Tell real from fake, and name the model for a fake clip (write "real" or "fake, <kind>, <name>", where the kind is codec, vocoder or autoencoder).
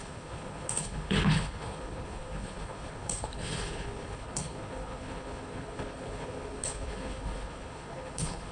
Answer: fake, codec, HILCodec